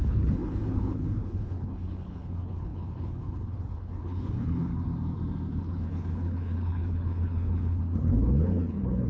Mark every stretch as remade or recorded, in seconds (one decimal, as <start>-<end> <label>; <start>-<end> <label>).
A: 0.0-4.7 remade; 4.7-5.6 recorded; 5.6-9.1 remade